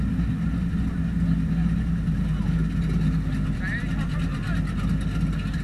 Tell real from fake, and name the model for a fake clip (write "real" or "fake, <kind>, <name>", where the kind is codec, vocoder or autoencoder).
real